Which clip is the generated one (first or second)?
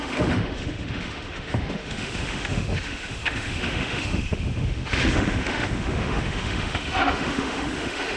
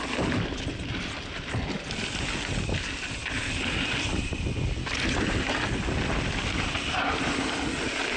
first